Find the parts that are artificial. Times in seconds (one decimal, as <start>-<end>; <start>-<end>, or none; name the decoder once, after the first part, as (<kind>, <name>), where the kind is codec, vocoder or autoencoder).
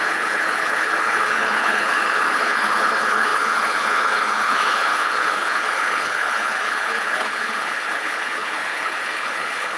0.0-9.8 (codec, HILCodec)